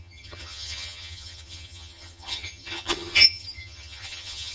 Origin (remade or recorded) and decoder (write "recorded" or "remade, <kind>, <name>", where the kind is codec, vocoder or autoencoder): remade, vocoder, HiFi-GAN